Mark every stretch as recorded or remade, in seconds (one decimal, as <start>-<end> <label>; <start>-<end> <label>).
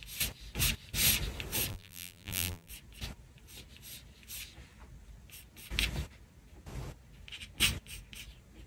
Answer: 0.0-1.7 recorded; 1.7-2.7 remade; 2.7-8.7 recorded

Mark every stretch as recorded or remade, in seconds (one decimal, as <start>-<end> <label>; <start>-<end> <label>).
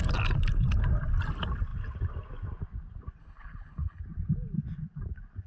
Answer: 0.0-3.2 recorded; 3.2-4.0 remade; 4.0-5.5 recorded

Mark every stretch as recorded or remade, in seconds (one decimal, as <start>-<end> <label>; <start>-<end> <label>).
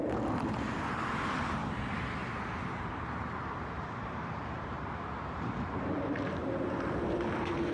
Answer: 0.0-2.2 recorded; 2.2-6.7 remade; 6.7-7.7 recorded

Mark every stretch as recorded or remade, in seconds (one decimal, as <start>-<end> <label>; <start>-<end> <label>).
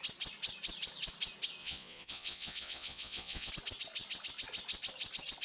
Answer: 0.0-1.6 recorded; 1.6-3.5 remade; 3.5-5.4 recorded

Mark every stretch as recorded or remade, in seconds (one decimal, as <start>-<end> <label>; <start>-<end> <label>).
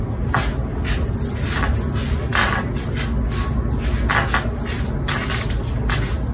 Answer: 0.0-6.3 recorded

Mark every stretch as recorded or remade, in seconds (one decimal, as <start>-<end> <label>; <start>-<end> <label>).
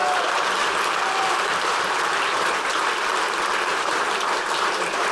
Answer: 0.0-1.7 recorded; 1.7-2.7 remade; 2.7-3.7 recorded; 3.7-5.1 remade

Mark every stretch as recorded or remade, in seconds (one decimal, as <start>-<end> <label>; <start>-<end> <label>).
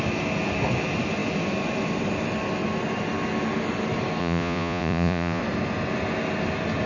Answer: 0.0-4.2 recorded; 4.2-5.4 remade; 5.4-6.9 recorded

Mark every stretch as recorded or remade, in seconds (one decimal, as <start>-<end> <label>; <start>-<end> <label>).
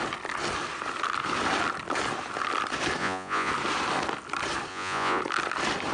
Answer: 0.0-3.0 recorded; 3.0-3.5 remade; 3.5-4.7 recorded; 4.7-5.2 remade; 5.2-5.9 recorded